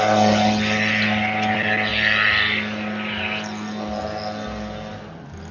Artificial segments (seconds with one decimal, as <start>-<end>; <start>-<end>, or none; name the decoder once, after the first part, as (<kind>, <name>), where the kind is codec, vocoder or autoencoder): none